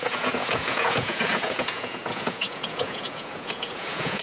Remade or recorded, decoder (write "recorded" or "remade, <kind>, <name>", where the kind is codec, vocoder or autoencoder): remade, vocoder, Vocos